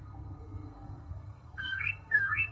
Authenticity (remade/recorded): remade